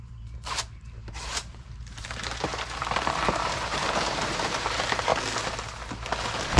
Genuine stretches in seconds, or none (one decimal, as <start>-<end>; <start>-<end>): 5.1-6.6